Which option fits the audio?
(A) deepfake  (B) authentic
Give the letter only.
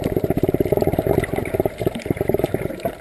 A